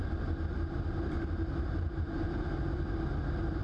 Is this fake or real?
real